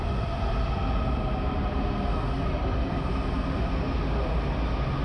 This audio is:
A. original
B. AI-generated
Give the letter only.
A